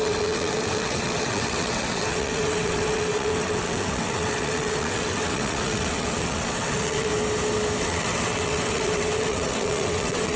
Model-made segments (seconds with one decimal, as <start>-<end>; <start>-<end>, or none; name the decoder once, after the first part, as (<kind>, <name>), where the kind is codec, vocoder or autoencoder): 0.0-7.1 (vocoder, WaveNeXt); 7.8-10.4